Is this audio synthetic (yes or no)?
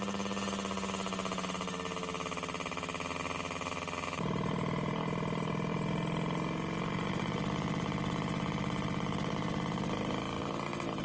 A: no